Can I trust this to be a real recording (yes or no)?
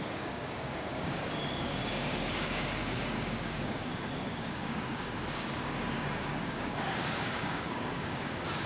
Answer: no